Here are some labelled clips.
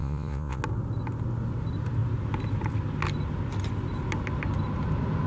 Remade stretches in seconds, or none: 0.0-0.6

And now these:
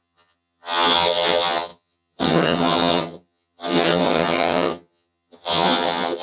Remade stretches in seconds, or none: 0.0-6.2